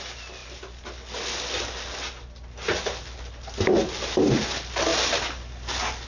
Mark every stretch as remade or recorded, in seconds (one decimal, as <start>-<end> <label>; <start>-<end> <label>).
0.0-6.1 recorded